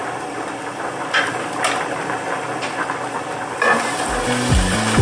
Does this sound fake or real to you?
real